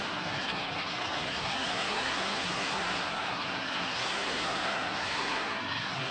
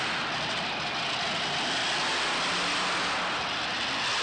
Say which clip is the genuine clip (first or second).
second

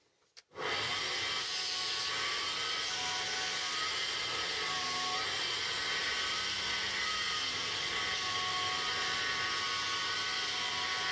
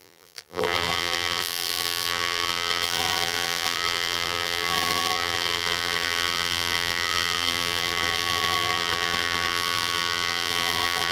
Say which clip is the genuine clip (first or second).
first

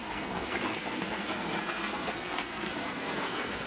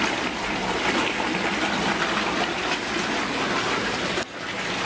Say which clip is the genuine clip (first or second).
second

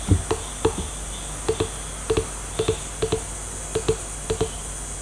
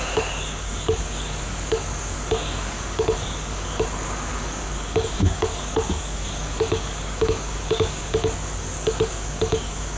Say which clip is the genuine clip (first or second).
first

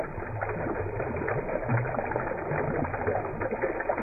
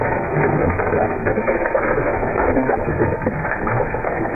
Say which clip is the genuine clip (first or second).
first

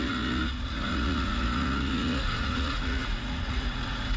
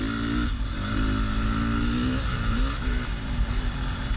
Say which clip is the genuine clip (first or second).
second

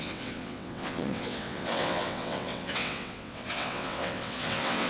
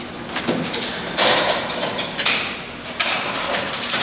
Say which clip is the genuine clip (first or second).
second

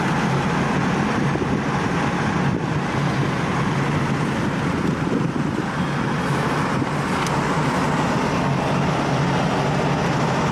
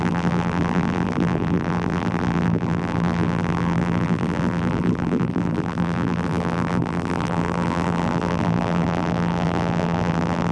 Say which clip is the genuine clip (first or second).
first